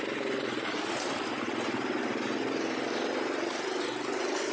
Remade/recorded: recorded